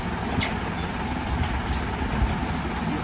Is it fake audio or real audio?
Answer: real